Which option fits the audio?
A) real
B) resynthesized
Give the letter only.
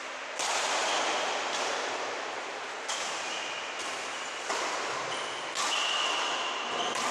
A